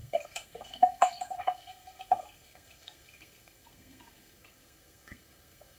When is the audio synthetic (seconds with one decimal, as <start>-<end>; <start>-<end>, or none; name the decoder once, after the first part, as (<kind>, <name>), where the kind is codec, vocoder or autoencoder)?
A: 0.0-5.8 (codec, SNAC)